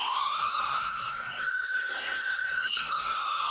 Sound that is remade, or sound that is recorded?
remade